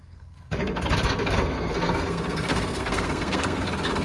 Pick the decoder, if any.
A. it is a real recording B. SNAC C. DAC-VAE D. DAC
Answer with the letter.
B